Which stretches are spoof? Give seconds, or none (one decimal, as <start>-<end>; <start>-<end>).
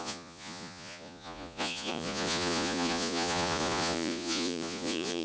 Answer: 0.0-5.2